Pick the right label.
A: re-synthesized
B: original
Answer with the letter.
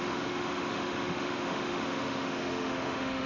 A